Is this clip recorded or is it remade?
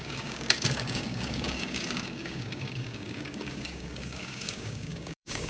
remade